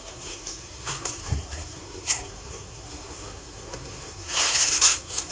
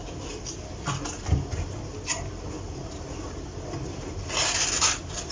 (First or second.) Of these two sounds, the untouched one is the second